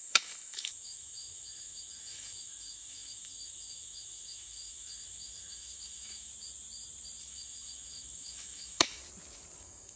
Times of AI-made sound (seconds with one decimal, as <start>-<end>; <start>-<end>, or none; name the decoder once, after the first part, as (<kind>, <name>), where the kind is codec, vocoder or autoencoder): 0.0-6.3 (autoencoder, DAC-VAE); 7.2-9.0; 9.6-10.0